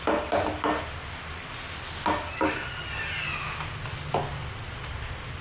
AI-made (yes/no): no